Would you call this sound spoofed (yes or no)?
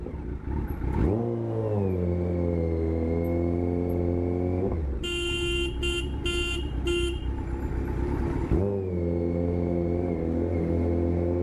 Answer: no